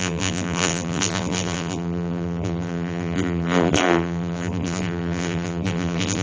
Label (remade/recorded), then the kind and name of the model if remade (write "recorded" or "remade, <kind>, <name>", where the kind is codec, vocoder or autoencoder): remade, vocoder, BigVGAN v2